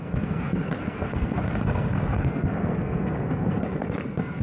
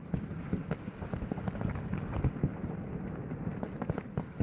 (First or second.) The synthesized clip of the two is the first